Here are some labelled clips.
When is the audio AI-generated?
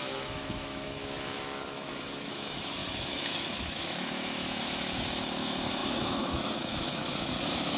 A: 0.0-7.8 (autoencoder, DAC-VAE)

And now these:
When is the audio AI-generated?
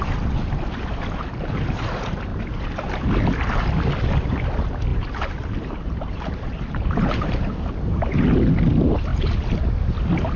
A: 2.3-3.1 (vocoder, BigVGAN v2); 4.9-8.2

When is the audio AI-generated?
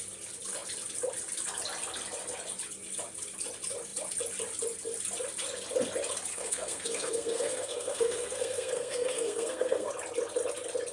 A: 6.3-9.9 (codec, SNAC)